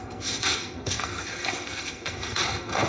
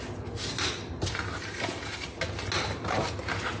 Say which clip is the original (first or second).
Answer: second